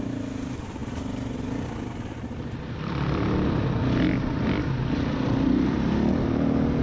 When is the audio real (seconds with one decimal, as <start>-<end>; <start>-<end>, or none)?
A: 0.0-6.8